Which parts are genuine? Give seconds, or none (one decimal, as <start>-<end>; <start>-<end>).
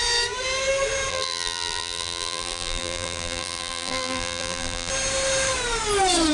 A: 0.0-1.1; 4.9-6.3